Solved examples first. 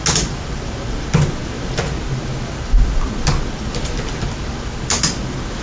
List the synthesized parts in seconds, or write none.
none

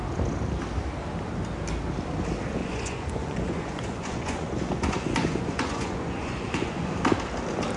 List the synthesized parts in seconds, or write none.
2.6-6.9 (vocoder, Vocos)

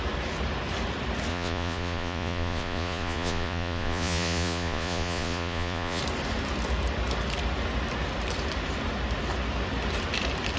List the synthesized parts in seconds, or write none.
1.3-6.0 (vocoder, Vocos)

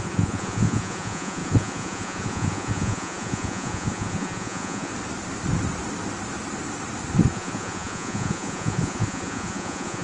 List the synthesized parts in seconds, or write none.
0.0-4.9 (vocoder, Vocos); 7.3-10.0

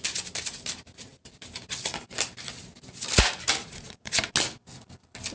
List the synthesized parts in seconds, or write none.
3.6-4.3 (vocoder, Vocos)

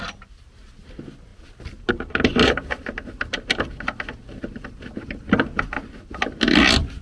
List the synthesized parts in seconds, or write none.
none